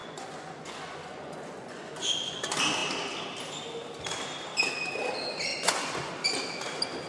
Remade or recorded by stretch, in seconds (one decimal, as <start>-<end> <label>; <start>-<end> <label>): 0.0-2.3 remade; 2.3-5.5 recorded; 5.5-6.1 remade; 6.1-7.1 recorded